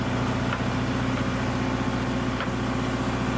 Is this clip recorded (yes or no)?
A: yes